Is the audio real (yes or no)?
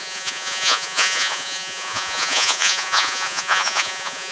no